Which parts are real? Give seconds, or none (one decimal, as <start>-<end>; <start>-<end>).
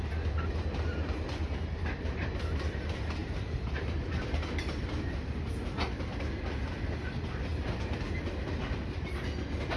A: 0.0-3.2; 5.5-7.5; 8.0-9.8